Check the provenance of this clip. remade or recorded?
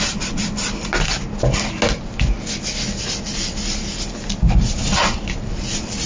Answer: recorded